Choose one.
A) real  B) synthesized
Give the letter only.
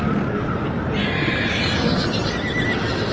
A